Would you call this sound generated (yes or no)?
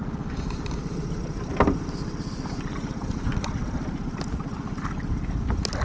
no